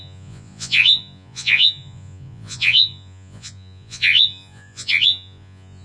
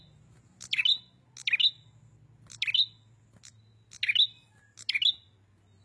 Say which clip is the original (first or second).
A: second